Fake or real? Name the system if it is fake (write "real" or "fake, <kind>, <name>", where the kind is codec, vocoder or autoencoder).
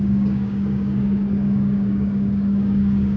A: fake, codec, DAC